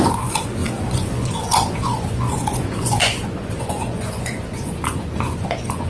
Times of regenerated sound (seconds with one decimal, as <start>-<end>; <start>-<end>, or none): 0.0-5.9